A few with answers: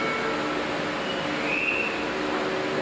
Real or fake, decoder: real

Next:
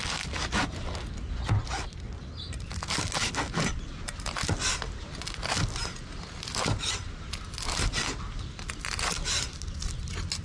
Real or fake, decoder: real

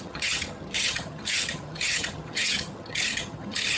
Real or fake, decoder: fake, vocoder, HiFi-GAN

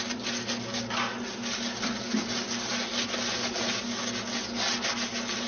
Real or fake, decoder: fake, vocoder, BigVGAN v2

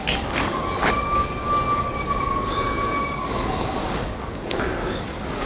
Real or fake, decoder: fake, codec, DAC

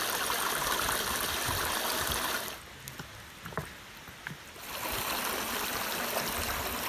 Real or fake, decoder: real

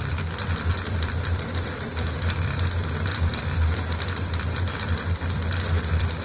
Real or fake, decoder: fake, vocoder, BigVGAN v2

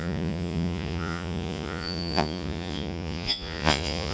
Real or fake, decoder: fake, vocoder, Vocos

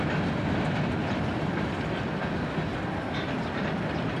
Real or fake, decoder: real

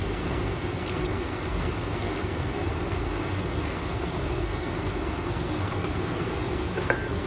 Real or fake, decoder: fake, codec, SNAC